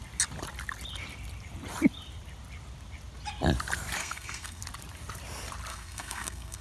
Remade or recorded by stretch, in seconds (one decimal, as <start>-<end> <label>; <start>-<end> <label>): 0.0-4.0 recorded; 4.0-4.6 remade; 4.6-5.7 recorded; 5.7-6.6 remade